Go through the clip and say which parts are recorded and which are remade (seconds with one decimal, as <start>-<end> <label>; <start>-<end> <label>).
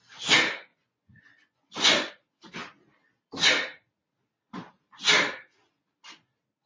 0.0-0.7 recorded; 0.7-2.1 remade; 2.1-6.7 recorded